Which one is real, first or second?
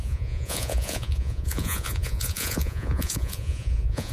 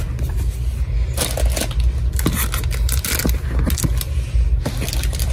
second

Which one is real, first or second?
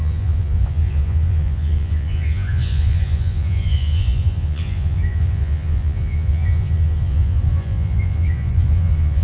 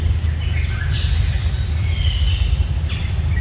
second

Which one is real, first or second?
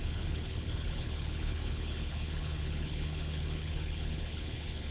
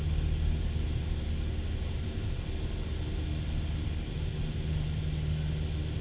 second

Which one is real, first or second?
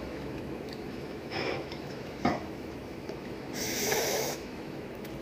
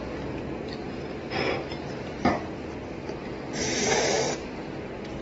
second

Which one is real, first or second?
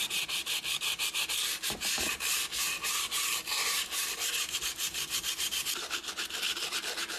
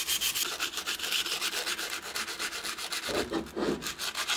second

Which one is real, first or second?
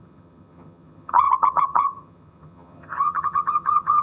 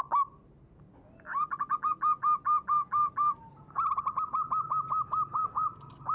second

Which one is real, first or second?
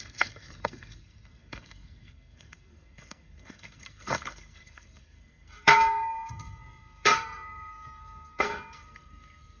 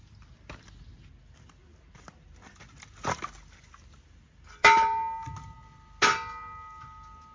second